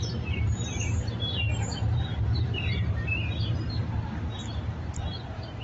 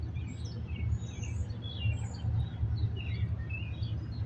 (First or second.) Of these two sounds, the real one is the second